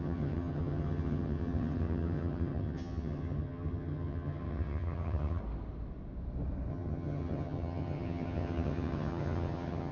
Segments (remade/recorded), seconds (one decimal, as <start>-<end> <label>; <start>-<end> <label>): 0.0-5.4 remade; 5.4-6.7 recorded; 6.7-9.9 remade